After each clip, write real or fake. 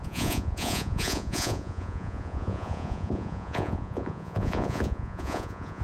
fake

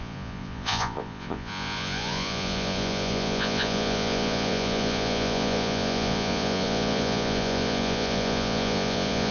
fake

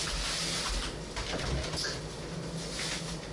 real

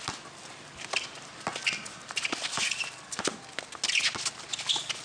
real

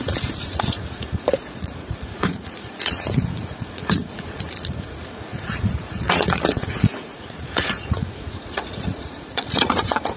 fake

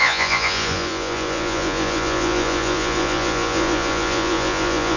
fake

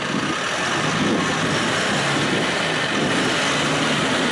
real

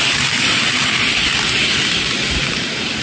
real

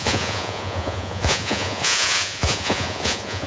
fake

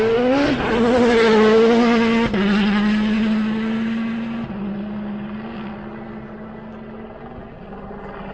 real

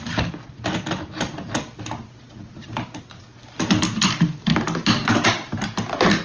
real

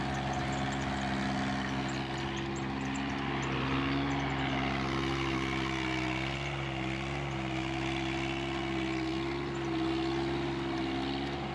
real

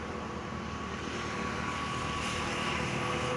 real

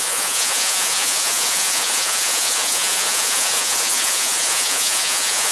fake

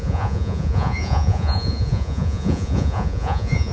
fake